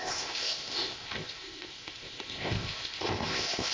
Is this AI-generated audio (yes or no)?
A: yes